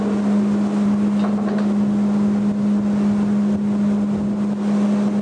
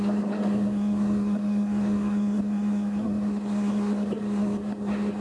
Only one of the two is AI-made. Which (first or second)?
second